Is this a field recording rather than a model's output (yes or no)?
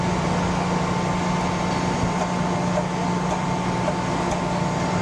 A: yes